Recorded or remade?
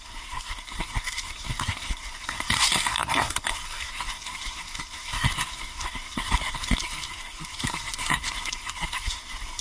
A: remade